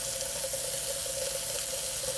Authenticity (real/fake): real